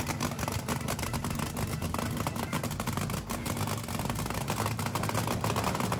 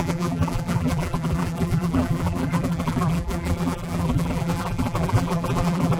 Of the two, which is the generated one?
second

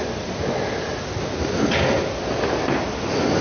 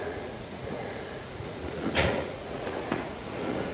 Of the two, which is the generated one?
second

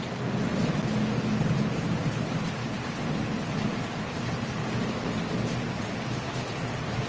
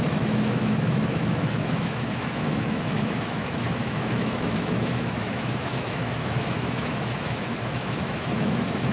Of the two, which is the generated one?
second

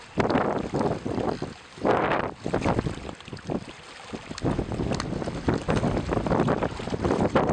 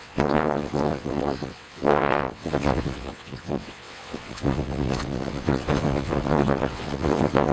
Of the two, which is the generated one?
second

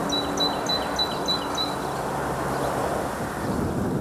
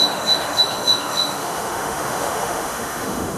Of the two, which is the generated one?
second